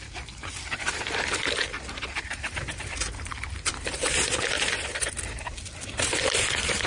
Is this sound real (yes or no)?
no